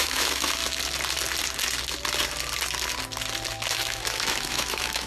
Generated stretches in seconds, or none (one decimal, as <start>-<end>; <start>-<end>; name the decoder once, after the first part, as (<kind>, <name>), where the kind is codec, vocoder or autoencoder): 0.0-0.6 (autoencoder, DAC-VAE); 3.7-5.1